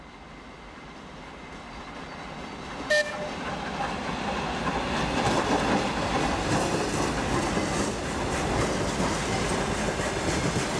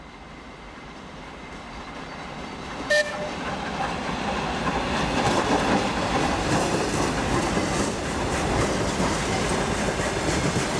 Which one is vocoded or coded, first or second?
second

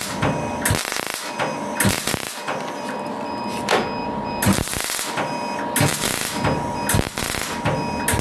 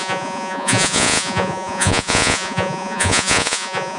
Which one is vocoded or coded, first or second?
second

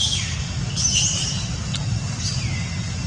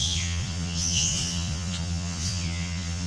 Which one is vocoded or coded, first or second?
second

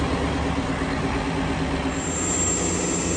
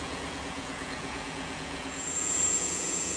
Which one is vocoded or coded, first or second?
second